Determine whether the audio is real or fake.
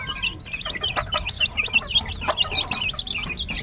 real